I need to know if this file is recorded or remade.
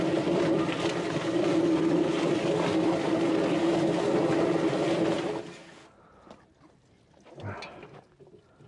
recorded